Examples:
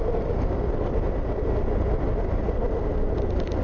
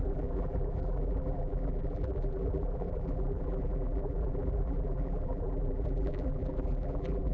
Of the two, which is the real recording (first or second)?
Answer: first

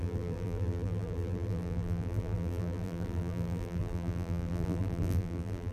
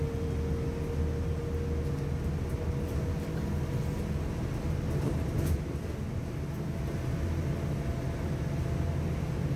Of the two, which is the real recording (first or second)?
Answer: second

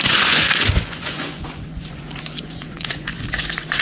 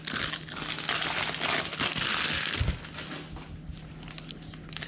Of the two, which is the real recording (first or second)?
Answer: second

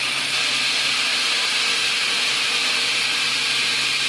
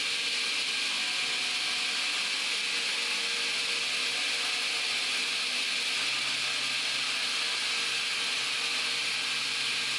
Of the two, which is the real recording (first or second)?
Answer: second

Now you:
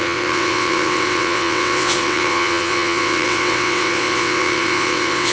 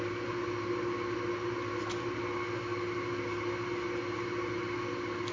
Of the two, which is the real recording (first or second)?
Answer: second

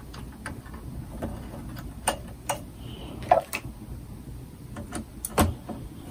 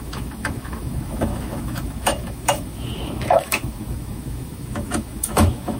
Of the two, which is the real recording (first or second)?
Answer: first